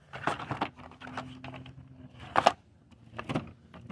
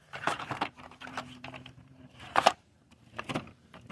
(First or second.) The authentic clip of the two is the first